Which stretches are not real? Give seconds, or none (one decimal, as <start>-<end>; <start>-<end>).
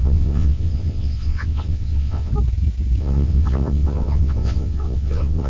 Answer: 0.0-2.3; 3.0-5.5